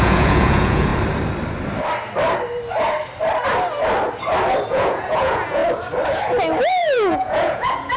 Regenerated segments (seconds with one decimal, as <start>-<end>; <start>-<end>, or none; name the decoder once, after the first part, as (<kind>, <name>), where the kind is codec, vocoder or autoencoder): 0.0-0.9 (vocoder, Vocos); 4.7-5.6; 6.7-8.0